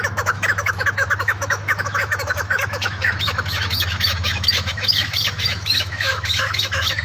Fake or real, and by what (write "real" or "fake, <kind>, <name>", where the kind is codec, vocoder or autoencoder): fake, autoencoder, DAC-VAE